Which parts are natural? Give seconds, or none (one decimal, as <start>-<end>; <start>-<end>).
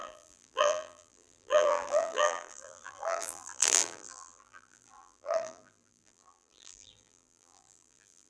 none